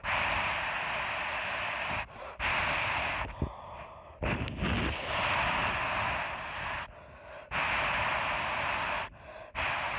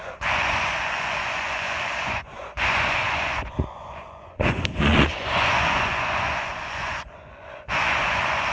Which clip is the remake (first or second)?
second